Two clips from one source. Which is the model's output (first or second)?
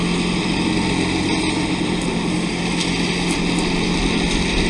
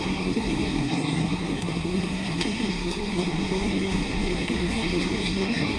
second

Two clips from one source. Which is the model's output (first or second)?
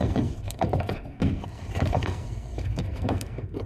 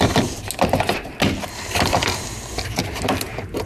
first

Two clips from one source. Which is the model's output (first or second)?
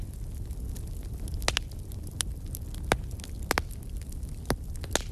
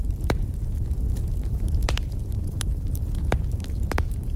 second